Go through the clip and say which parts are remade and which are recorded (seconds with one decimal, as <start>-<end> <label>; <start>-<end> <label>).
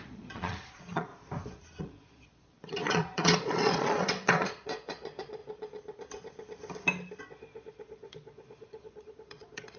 0.0-1.1 remade; 1.1-1.8 recorded; 1.8-5.4 remade; 5.4-7.2 recorded; 7.2-9.8 remade